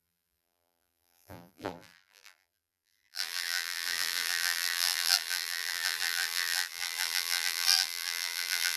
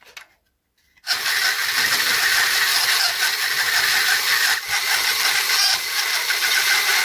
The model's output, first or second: first